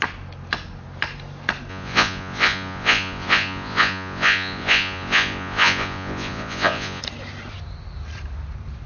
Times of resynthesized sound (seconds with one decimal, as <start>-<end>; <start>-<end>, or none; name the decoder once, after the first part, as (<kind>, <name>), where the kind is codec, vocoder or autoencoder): 1.7-7.0 (vocoder, Vocos)